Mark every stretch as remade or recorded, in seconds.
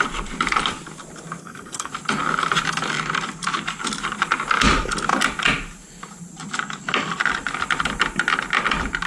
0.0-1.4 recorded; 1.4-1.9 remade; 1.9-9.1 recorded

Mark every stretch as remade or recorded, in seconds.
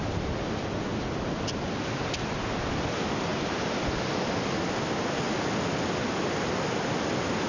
0.0-7.5 recorded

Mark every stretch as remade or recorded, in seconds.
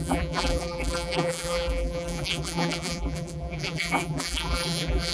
0.0-5.1 remade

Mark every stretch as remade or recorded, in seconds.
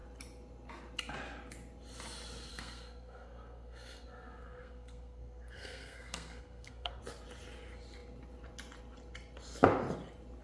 0.0-2.5 recorded; 2.5-7.0 remade; 7.0-10.4 recorded